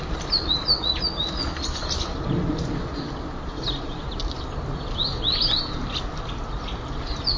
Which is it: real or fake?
real